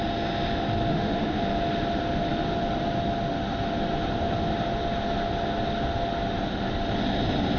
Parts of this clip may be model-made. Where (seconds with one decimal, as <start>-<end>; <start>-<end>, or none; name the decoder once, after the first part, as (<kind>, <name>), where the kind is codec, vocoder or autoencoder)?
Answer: 0.9-1.4 (autoencoder, DAC-VAE)